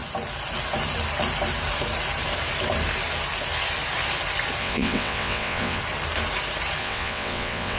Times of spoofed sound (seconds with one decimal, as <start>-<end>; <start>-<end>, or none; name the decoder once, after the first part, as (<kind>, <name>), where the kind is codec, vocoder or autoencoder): 4.6-5.8 (vocoder, WaveNeXt); 6.8-7.8